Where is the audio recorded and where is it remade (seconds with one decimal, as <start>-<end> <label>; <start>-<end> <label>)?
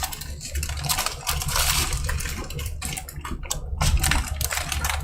0.0-2.2 recorded; 2.2-3.7 remade; 3.7-5.0 recorded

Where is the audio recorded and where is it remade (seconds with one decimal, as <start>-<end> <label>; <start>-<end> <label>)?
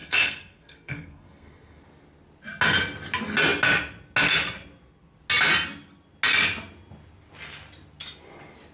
0.0-1.8 remade; 1.8-8.7 recorded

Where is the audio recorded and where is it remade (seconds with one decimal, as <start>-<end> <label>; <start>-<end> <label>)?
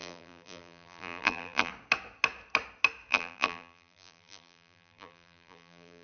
0.0-1.7 remade; 1.7-3.1 recorded; 3.1-6.0 remade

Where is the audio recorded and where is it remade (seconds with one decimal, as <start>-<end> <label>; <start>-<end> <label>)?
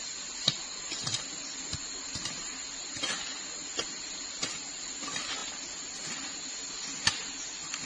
0.0-7.9 recorded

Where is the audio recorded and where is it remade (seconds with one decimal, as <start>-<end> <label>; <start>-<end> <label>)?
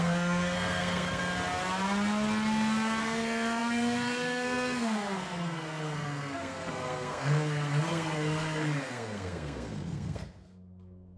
0.0-1.2 remade; 1.2-3.0 recorded; 3.0-11.2 remade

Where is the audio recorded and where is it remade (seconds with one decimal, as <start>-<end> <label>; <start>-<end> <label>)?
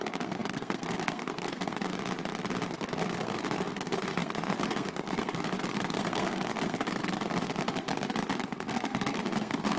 0.0-1.9 remade; 1.9-2.7 recorded; 2.7-7.9 remade; 7.9-8.4 recorded; 8.4-9.8 remade